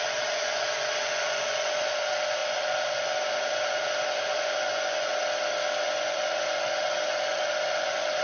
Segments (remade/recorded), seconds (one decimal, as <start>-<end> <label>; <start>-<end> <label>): 0.0-5.1 remade; 5.1-5.8 recorded; 5.8-8.2 remade